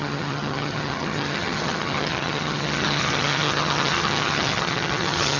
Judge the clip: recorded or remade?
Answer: remade